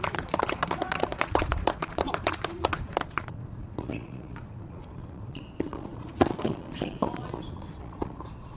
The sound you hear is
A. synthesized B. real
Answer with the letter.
A